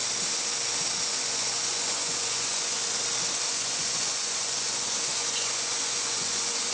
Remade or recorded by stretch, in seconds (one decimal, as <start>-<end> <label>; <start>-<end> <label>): 0.0-1.1 recorded; 1.1-2.8 remade; 2.8-3.5 recorded; 3.5-6.7 remade